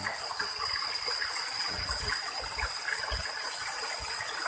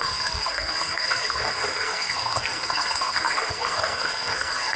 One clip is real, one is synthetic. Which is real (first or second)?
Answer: first